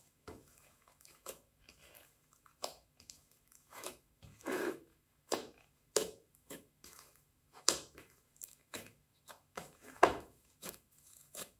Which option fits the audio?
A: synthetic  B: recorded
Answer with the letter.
A